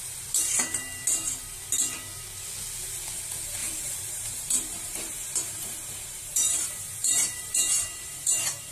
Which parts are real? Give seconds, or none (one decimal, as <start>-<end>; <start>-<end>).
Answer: 0.0-3.6